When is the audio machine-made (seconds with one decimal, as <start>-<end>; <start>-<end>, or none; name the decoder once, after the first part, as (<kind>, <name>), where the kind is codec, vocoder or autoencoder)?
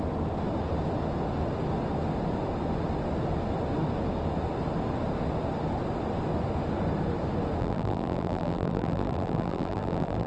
7.6-10.3 (vocoder, BigVGAN v2)